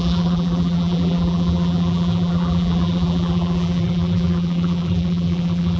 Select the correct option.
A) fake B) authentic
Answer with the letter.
A